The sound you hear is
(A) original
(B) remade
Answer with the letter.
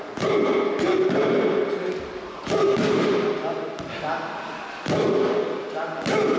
A